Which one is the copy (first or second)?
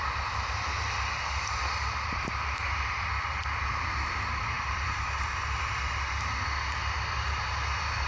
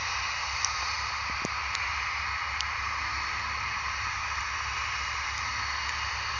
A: first